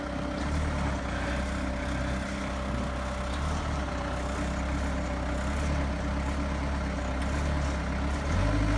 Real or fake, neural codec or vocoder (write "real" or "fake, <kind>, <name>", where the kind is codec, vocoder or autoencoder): real